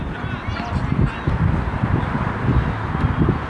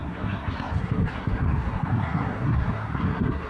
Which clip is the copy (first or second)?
second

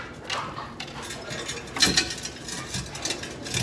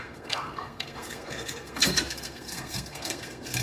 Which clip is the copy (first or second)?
second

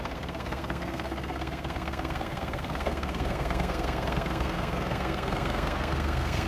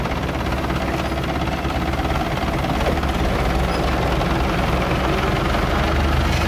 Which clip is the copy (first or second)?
first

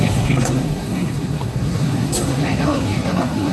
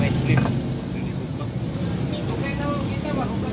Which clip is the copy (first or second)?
first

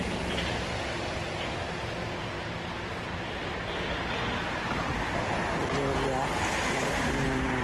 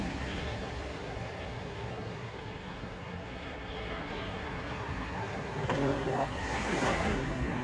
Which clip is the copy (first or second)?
second